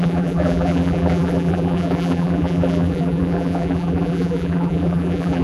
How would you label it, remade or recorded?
remade